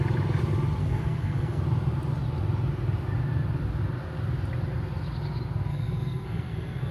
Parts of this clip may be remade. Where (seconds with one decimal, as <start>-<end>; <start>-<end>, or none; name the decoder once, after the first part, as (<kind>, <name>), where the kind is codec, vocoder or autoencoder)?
0.8-1.6 (codec, SNAC); 5.7-6.9